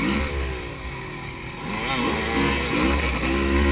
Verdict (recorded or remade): recorded